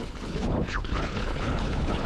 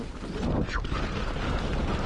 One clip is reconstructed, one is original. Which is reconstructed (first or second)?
first